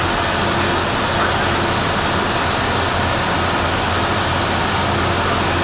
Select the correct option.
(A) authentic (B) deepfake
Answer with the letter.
A